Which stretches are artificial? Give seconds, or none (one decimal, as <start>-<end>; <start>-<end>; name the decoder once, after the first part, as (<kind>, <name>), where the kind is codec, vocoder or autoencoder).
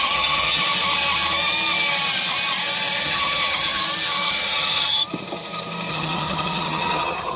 0.0-0.6 (vocoder, HiFi-GAN); 3.0-3.8; 4.3-5.0; 5.9-7.4